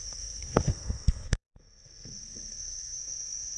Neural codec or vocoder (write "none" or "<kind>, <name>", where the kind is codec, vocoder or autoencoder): codec, SNAC